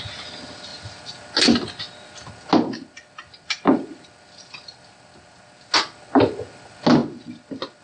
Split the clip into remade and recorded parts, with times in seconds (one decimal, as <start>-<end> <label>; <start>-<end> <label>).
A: 0.0-7.8 recorded